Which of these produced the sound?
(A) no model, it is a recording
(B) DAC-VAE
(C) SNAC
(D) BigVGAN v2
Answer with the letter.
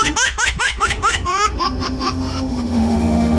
B